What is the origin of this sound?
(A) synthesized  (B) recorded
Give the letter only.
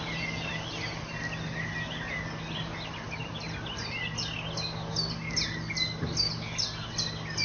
B